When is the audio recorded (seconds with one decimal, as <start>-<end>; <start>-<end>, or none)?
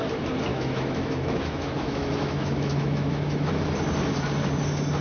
0.0-0.5; 3.5-5.0